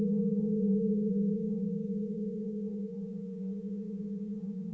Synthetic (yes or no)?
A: yes